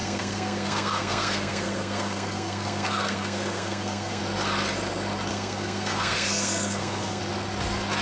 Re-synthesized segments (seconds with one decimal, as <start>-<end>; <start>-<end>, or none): 0.0-4.2; 5.3-7.2